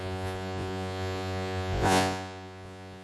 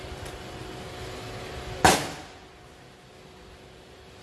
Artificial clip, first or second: first